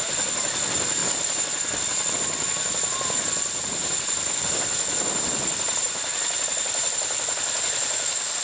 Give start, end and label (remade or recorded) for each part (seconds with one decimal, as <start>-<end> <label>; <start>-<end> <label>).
0.0-8.4 recorded